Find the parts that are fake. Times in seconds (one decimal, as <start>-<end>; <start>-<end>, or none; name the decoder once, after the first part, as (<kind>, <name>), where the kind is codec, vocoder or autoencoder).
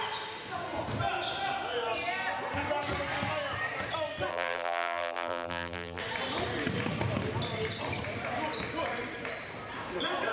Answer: 4.3-6.0 (vocoder, BigVGAN v2)